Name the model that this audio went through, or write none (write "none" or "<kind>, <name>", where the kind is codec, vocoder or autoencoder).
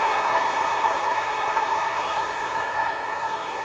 codec, SNAC